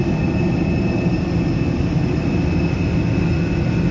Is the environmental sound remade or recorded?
recorded